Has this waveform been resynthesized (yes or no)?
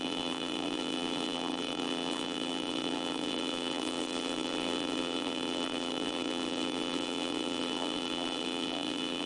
yes